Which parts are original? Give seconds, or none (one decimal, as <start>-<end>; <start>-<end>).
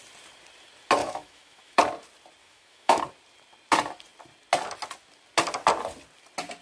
0.0-1.0; 1.8-2.4; 3.0-6.6